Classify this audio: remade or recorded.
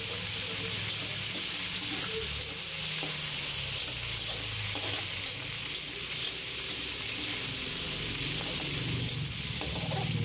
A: recorded